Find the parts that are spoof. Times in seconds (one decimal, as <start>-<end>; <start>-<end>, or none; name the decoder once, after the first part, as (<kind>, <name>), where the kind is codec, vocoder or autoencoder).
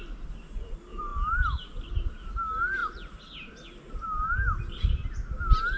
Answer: none